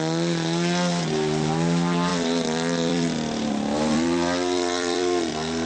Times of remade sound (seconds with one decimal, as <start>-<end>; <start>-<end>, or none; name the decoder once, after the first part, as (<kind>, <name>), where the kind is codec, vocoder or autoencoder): 2.1-5.3 (vocoder, BigVGAN v2)